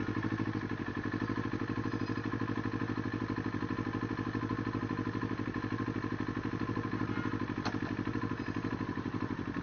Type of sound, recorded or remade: recorded